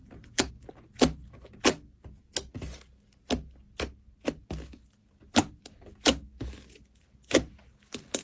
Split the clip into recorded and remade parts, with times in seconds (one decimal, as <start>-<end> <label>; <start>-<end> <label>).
0.0-0.5 remade; 0.5-5.0 recorded; 5.0-7.5 remade; 7.5-8.2 recorded